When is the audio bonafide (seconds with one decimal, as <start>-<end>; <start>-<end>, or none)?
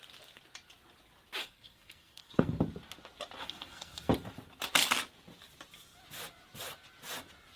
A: 0.0-1.4; 2.6-3.4; 4.1-7.6